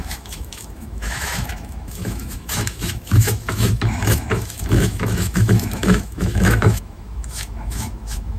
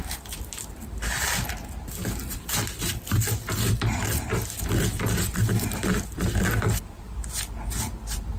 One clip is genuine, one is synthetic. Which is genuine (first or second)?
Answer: second